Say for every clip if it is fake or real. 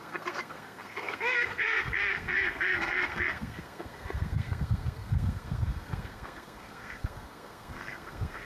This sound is fake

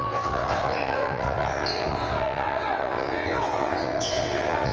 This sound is fake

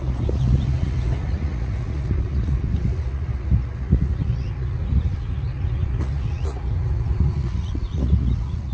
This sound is fake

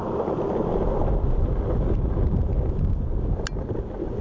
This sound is real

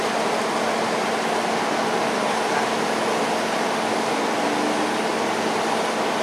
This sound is real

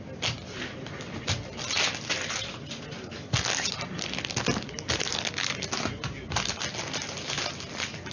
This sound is real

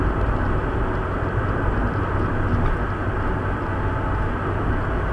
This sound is real